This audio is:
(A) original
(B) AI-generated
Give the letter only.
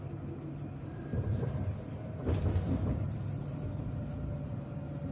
B